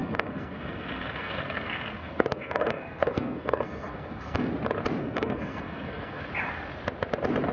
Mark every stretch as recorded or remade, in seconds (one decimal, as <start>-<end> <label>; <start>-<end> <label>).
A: 0.0-4.5 remade; 4.5-5.0 recorded; 5.0-6.2 remade; 6.2-7.5 recorded